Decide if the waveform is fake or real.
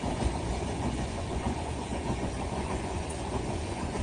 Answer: fake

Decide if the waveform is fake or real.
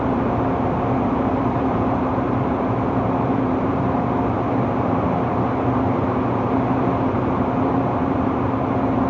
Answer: fake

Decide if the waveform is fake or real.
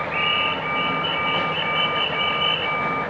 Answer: real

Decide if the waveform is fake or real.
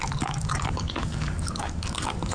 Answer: fake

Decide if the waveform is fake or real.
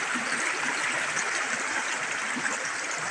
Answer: fake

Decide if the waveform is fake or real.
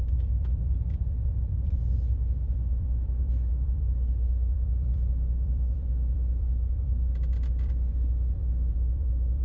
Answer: fake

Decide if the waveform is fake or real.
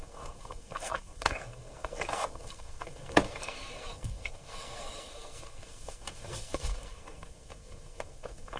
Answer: fake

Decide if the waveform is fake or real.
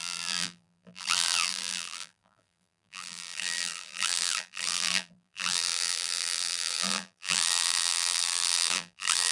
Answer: fake